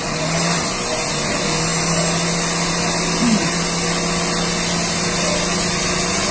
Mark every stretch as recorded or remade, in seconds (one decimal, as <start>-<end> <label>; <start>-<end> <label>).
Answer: 0.0-6.3 recorded